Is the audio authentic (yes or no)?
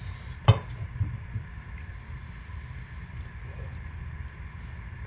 yes